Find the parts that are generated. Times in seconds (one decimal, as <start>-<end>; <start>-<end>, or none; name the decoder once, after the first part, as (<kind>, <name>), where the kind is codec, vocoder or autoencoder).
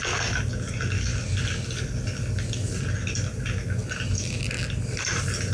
none